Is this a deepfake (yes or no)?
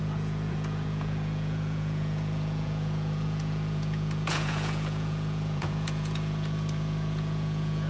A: yes